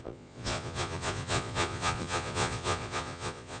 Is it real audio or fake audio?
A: fake